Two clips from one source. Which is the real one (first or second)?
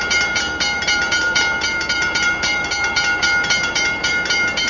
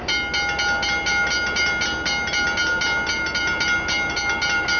second